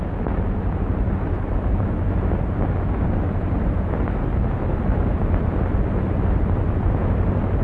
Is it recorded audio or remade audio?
recorded